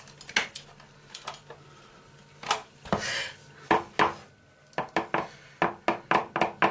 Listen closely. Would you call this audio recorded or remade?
recorded